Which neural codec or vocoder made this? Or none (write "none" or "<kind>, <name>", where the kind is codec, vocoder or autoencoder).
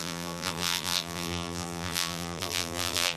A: vocoder, BigVGAN v2